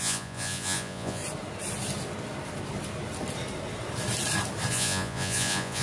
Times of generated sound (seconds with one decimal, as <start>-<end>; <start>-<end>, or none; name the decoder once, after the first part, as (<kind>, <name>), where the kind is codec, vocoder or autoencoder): 0.0-1.2 (vocoder, Vocos); 4.7-5.8